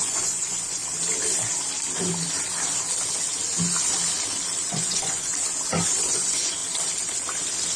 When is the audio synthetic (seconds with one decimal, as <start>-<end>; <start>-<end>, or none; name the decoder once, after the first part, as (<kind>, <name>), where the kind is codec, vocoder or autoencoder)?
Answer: 0.0-0.8 (vocoder, Vocos); 4.7-5.3; 6.0-6.6